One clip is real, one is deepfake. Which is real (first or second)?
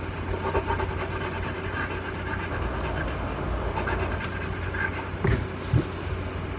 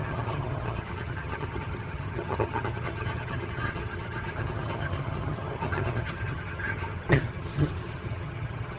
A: first